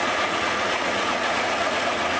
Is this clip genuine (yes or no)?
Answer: no